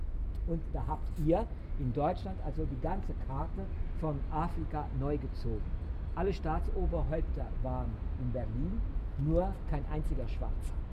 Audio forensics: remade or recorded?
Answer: recorded